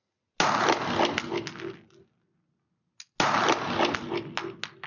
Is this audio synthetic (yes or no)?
no